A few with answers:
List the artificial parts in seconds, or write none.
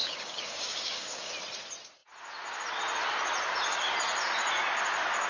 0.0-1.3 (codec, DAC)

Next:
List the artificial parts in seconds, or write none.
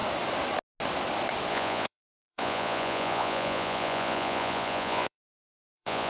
1.5-6.1 (vocoder, Vocos)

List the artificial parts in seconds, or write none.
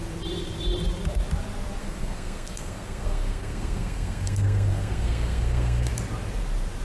1.8-5.9 (codec, SNAC)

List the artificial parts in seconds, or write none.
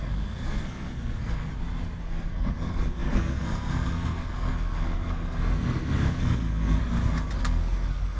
0.0-1.5 (codec, SNAC); 2.0-6.8; 7.4-8.2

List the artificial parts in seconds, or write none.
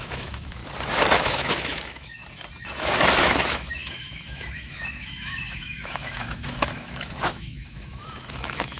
0.0-0.6 (autoencoder, DAC-VAE); 1.2-2.2; 3.2-8.8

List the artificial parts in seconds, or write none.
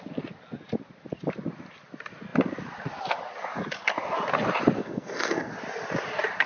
4.8-5.5 (codec, SNAC)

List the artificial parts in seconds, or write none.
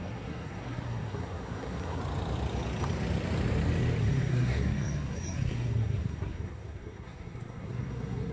0.0-2.0 (codec, SNAC); 4.0-8.3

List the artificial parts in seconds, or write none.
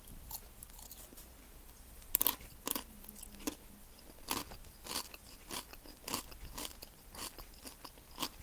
none